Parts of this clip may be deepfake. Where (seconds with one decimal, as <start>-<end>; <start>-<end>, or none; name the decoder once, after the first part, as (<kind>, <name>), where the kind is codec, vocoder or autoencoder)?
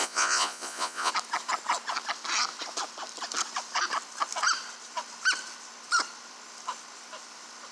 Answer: 0.0-1.1 (vocoder, Vocos)